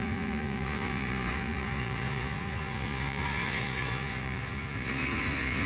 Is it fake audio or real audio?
fake